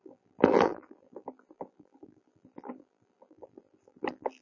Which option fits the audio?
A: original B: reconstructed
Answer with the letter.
B